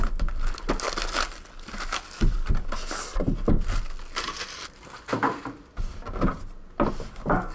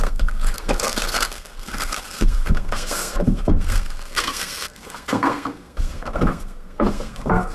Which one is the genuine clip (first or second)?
first